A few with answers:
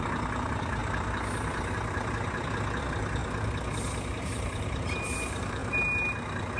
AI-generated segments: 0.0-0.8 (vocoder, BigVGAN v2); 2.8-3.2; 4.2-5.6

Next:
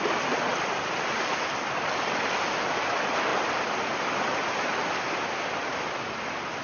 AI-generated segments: 0.5-2.2 (vocoder, BigVGAN v2)

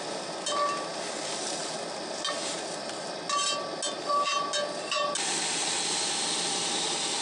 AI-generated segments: none

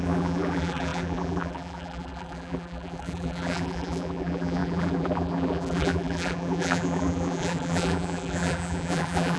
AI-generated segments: 0.0-9.4 (vocoder, BigVGAN v2)